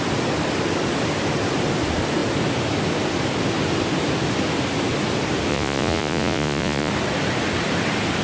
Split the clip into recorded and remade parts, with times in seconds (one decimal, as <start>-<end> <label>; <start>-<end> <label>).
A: 0.0-5.5 recorded; 5.5-6.9 remade; 6.9-8.2 recorded